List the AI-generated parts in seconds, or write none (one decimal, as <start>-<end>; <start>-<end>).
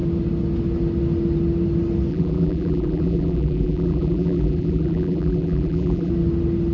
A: 2.1-6.1